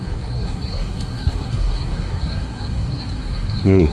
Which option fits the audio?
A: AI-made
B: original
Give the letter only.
A